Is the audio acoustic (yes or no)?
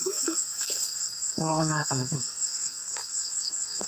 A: no